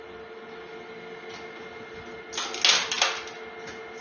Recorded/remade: recorded